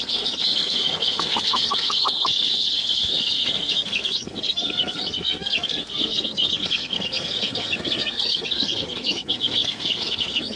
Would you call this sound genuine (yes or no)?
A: no